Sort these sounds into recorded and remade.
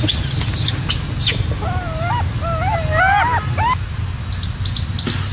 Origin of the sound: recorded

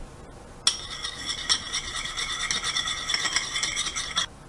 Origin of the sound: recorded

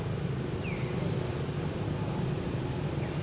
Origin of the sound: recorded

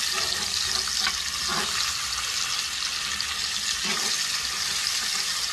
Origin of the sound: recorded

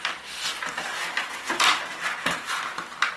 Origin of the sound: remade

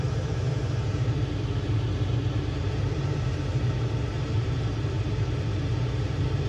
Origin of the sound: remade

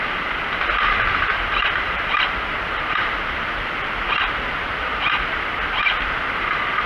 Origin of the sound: recorded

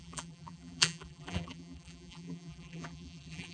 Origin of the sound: remade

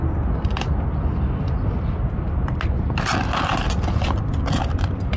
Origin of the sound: recorded